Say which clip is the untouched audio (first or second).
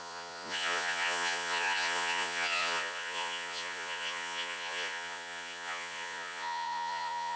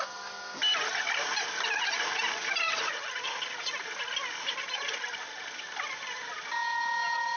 second